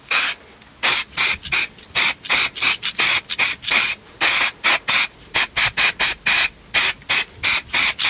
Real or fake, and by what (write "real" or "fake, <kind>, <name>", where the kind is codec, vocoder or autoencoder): real